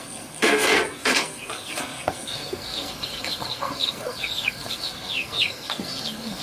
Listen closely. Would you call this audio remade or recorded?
remade